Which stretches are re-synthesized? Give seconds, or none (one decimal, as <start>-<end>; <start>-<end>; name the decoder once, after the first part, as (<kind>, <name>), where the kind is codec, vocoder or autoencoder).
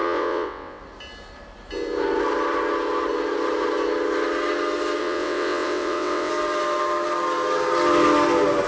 0.0-0.8 (vocoder, WaveNeXt); 5.0-6.3